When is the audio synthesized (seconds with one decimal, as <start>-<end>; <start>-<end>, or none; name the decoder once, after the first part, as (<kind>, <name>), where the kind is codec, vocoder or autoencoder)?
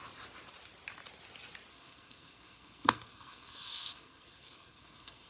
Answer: 1.7-5.3 (codec, SNAC)